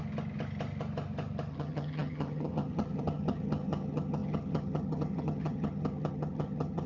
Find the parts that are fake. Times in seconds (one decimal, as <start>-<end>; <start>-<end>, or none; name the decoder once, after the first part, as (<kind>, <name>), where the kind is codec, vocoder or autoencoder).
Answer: 1.5-6.9 (vocoder, HiFi-GAN)